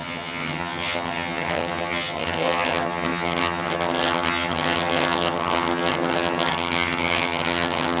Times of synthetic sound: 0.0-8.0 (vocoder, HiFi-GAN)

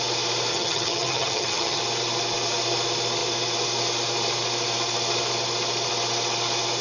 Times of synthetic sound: 0.5-1.8 (vocoder, HiFi-GAN)

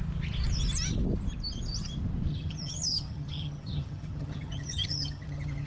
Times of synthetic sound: 2.3-5.7 (vocoder, HiFi-GAN)

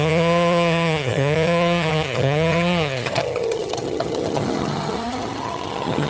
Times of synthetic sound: 0.0-6.1 (vocoder, HiFi-GAN)

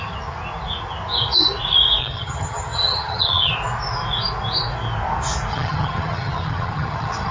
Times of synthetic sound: 2.0-3.5 (vocoder, HiFi-GAN); 5.5-7.3

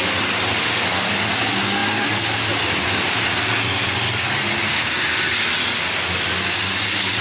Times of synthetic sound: none

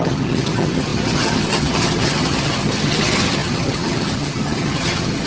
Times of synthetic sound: 0.0-5.3 (vocoder, HiFi-GAN)